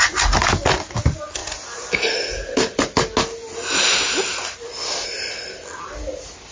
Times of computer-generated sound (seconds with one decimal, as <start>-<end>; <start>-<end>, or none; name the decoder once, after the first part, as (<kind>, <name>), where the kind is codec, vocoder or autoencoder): none